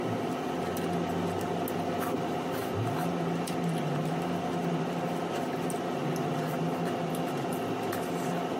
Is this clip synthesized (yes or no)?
no